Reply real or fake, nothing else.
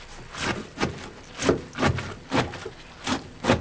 real